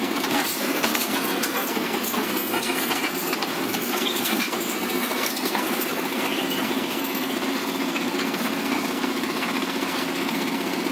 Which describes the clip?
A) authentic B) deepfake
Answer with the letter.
B